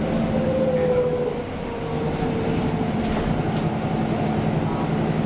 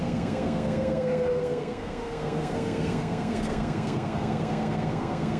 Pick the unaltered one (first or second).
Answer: first